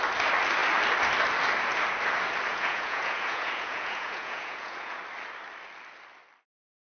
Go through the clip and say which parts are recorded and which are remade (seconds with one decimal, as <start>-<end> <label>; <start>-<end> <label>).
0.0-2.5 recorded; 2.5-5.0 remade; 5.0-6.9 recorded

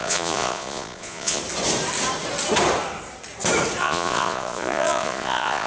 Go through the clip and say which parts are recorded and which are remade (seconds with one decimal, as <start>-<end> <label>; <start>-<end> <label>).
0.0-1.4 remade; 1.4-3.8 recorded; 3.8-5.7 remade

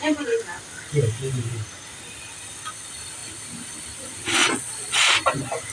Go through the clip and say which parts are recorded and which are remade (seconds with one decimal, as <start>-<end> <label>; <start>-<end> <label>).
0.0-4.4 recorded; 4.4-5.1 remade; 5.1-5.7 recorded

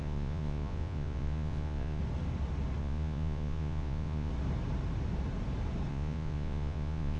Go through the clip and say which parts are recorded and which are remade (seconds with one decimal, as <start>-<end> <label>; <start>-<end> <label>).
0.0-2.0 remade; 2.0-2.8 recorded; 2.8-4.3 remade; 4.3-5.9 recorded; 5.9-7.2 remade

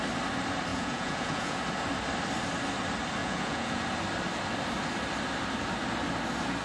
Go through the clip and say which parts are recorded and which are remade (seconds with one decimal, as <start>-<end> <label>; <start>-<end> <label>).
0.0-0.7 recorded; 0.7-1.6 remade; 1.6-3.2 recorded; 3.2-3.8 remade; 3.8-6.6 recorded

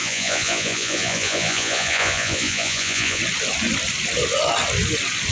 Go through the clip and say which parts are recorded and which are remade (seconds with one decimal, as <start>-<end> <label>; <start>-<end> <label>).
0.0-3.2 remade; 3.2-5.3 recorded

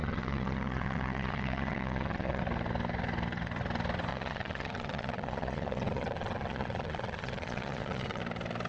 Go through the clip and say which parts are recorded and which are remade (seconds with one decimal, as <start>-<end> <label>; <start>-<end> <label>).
0.0-2.4 remade; 2.4-4.1 recorded; 4.1-8.2 remade; 8.2-8.7 recorded